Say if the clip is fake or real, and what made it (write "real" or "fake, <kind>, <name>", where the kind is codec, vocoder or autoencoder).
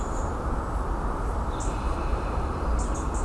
real